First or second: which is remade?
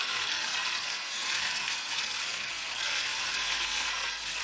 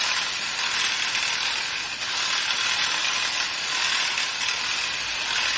first